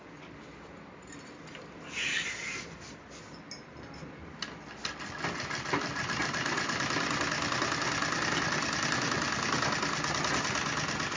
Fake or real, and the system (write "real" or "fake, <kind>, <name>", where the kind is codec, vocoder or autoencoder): real